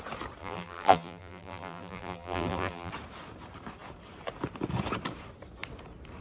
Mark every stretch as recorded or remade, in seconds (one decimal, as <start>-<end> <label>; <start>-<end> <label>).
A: 0.0-0.4 recorded; 0.4-2.9 remade; 2.9-6.2 recorded